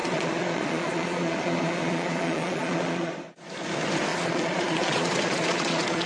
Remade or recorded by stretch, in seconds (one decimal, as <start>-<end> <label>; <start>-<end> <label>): 0.0-3.1 remade; 3.1-4.1 recorded; 4.1-6.1 remade